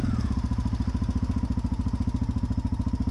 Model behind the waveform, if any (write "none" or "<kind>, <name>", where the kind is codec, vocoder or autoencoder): none